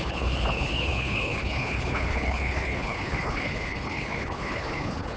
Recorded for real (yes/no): no